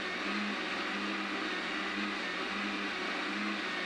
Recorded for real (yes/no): yes